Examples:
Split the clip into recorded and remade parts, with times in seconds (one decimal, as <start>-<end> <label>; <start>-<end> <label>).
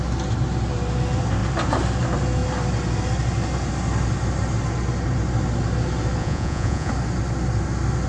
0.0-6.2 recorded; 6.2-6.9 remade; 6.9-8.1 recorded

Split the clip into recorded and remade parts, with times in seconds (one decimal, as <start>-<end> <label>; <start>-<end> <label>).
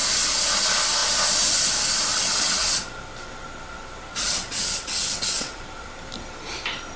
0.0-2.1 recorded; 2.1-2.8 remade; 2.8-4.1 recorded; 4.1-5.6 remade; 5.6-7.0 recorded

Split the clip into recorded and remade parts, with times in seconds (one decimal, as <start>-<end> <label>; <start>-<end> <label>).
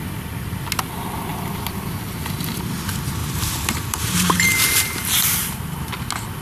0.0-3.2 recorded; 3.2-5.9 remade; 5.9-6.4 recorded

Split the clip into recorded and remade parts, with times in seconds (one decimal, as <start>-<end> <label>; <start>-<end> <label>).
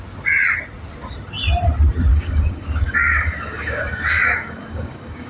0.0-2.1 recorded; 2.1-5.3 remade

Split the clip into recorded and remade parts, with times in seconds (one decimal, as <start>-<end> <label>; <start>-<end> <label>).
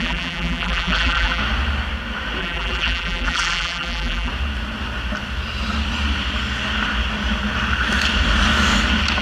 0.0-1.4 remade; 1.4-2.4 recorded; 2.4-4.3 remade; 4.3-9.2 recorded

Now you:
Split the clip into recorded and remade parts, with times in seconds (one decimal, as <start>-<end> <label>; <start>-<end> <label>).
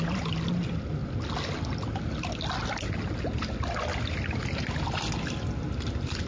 0.0-6.3 recorded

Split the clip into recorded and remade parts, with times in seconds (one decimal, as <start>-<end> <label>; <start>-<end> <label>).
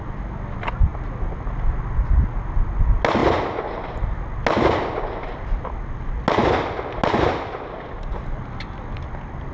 0.0-9.5 recorded